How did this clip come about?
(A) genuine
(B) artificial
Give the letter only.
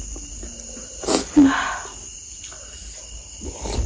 A